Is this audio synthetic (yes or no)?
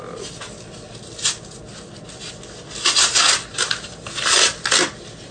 no